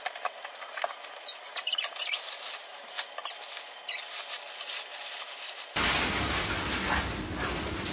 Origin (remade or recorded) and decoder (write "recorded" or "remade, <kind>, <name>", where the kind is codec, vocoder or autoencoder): recorded